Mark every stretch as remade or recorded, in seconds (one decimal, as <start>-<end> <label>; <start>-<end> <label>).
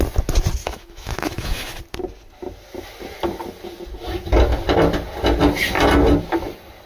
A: 0.0-0.6 recorded; 0.6-1.8 remade; 1.8-6.9 recorded